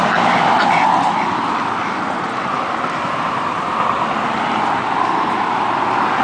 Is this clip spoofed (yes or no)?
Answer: no